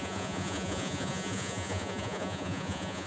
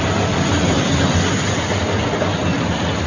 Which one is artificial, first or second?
first